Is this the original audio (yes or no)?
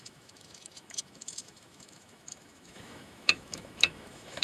no